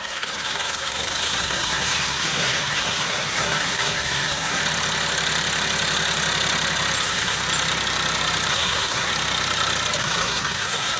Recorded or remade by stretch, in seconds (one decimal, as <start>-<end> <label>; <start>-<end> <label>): 0.0-4.6 remade; 4.6-7.0 recorded; 7.0-7.4 remade; 7.4-8.5 recorded; 8.5-9.1 remade; 9.1-10.0 recorded; 10.0-11.0 remade